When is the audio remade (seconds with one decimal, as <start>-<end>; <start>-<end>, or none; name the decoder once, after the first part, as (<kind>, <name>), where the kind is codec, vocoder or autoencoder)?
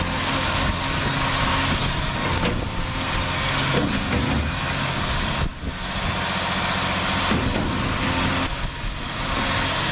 none